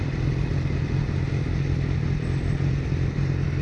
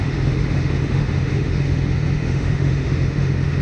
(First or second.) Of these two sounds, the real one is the first